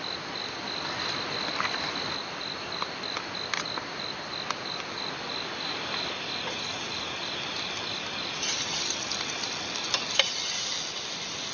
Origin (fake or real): real